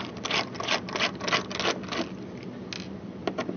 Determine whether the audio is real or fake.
real